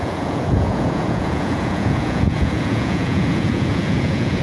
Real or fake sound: fake